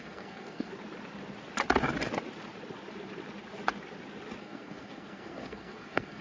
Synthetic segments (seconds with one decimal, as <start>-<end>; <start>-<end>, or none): 0.0-0.7; 4.4-6.2